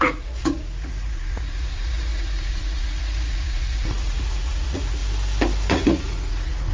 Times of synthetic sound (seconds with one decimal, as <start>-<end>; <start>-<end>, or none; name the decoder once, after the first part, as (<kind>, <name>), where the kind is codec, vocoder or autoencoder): 0.0-5.0 (vocoder, Vocos); 5.7-6.7